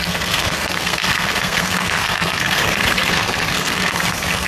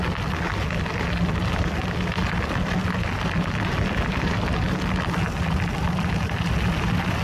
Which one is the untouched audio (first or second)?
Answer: second